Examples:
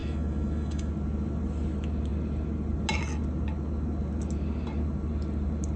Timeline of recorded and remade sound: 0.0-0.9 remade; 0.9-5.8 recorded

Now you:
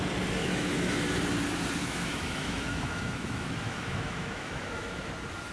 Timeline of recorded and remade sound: 0.0-0.4 recorded; 0.4-1.0 remade; 1.0-1.8 recorded; 1.8-5.1 remade; 5.1-5.5 recorded

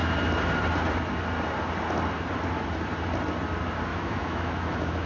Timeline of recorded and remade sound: 0.0-3.9 recorded; 3.9-5.1 remade